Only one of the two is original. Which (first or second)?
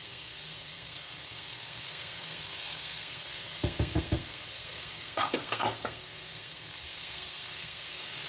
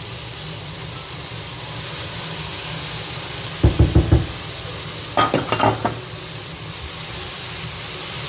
second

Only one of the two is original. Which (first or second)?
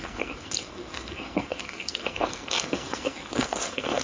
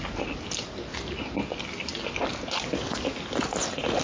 second